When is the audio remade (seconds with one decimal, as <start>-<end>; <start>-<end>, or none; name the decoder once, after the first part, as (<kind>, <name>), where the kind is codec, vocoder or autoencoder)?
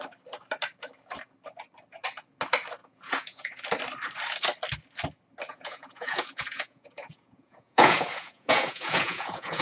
2.8-3.6 (vocoder, Vocos); 5.5-9.6